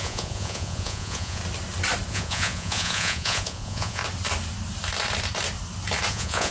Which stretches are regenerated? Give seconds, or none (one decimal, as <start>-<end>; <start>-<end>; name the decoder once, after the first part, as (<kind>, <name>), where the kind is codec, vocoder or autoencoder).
0.0-1.4 (vocoder, Vocos); 2.1-4.0; 6.1-6.5